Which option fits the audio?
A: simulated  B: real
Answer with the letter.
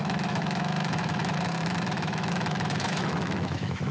A